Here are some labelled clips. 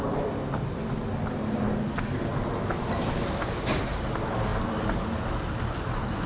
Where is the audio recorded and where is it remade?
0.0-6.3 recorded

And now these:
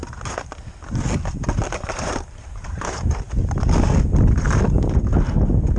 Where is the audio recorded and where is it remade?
0.0-1.8 recorded; 1.8-3.4 remade; 3.4-5.8 recorded